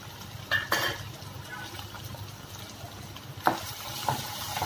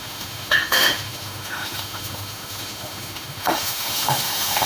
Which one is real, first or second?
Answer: first